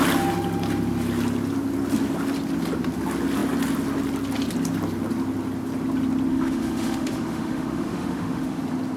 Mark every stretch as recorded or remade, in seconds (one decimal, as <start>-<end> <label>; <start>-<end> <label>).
0.0-6.3 recorded; 6.3-8.6 remade; 8.6-9.0 recorded